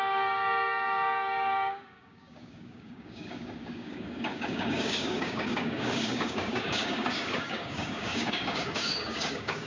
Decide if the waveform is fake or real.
fake